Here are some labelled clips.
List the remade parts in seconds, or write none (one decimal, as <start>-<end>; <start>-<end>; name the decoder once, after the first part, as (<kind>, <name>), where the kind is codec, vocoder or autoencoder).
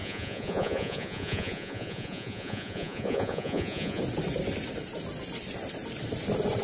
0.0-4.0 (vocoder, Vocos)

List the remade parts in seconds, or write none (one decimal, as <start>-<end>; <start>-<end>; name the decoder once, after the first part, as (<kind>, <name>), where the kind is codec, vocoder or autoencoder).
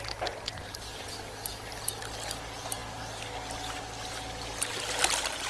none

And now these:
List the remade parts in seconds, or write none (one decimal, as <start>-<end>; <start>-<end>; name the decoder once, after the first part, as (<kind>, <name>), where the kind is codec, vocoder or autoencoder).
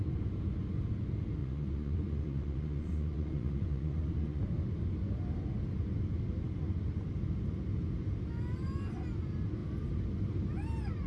1.4-4.4 (vocoder, Vocos)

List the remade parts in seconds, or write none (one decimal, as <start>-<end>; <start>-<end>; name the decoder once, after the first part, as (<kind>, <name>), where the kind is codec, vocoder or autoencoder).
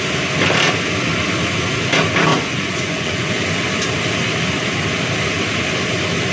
2.3-3.3 (vocoder, Vocos)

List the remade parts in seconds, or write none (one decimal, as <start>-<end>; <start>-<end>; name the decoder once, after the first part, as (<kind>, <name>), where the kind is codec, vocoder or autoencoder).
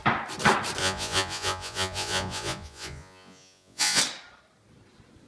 0.8-4.0 (vocoder, Vocos)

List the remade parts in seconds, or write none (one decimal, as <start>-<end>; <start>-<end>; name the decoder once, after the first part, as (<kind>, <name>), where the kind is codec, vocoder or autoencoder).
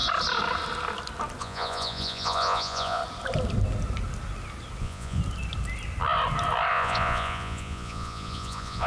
1.4-3.0 (vocoder, Vocos); 4.8-5.2; 6.7-8.9